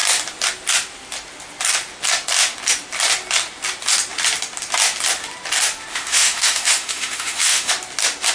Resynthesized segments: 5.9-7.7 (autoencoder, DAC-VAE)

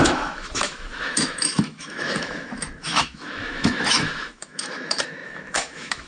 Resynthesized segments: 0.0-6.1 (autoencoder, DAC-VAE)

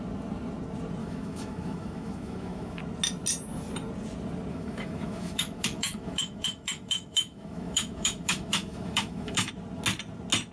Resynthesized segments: 1.0-2.8 (autoencoder, DAC-VAE); 4.5-9.5